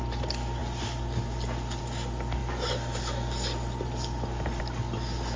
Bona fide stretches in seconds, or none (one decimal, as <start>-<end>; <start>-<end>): 0.0-5.4